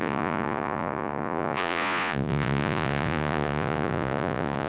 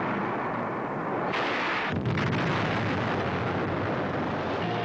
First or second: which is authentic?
second